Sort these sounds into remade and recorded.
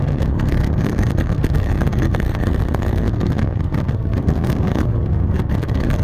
remade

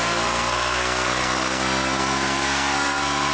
remade